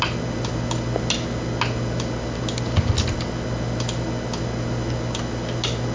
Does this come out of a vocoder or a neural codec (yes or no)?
no